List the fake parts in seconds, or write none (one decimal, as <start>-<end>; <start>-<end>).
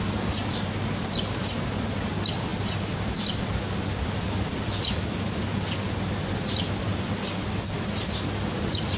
none